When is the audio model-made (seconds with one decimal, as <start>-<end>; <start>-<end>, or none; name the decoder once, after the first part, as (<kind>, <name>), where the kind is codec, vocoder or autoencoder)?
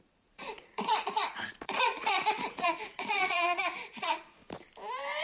0.0-4.4 (vocoder, Vocos)